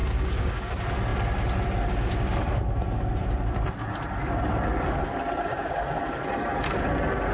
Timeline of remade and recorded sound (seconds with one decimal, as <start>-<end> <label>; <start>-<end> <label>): 0.0-0.7 remade; 0.7-5.5 recorded; 5.5-6.0 remade; 6.0-7.3 recorded